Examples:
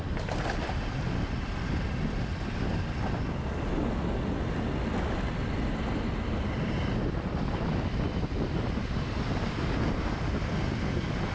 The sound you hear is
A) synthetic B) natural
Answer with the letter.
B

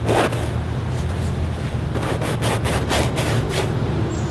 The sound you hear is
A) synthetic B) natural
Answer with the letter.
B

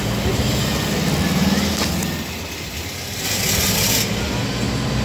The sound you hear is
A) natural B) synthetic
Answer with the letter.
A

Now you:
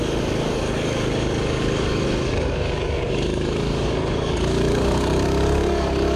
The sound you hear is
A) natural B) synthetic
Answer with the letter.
B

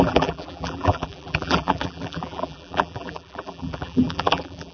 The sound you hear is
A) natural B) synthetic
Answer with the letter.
B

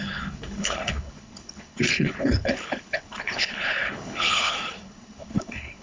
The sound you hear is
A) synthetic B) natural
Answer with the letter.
A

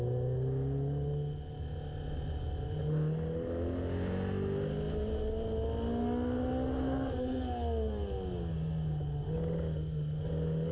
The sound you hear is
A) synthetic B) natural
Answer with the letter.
B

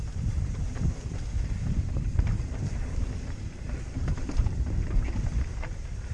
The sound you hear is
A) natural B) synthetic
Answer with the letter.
B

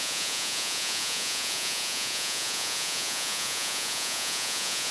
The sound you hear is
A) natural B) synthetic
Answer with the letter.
B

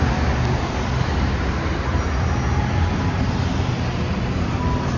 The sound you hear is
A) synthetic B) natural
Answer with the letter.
B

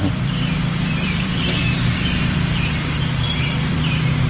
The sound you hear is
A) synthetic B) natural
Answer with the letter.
A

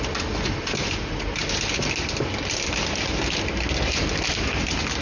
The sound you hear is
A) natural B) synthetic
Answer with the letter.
A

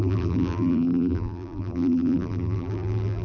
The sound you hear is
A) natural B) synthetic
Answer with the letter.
B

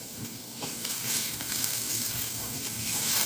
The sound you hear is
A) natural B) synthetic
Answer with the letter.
B